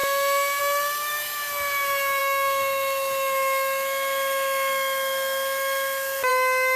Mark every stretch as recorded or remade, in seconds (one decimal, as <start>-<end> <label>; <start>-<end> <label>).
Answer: 0.0-0.6 recorded; 0.6-6.8 remade